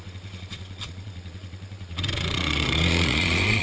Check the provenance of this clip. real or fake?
fake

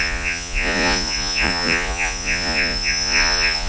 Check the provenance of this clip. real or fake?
fake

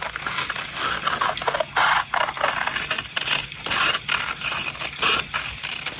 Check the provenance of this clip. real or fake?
real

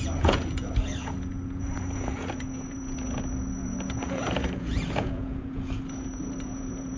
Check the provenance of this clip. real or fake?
fake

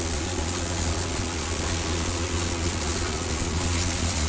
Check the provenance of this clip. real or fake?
fake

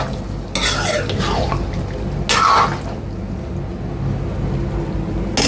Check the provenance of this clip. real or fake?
real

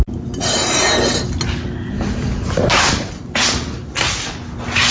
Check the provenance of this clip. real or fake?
real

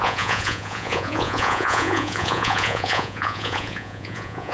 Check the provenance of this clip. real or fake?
fake